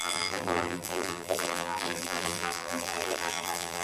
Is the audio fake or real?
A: fake